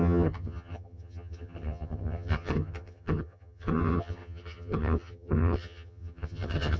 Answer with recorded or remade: remade